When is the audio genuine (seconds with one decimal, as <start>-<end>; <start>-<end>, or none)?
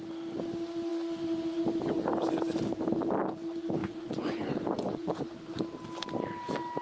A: 0.0-3.8; 5.2-6.8